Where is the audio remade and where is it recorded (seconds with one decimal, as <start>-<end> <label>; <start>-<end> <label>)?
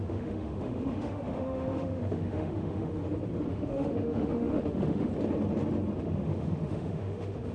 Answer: 0.0-3.0 remade; 3.0-3.5 recorded; 3.5-5.1 remade; 5.1-6.0 recorded; 6.0-7.5 remade